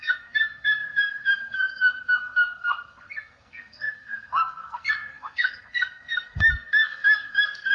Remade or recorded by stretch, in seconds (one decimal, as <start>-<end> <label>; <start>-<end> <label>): 0.0-7.7 remade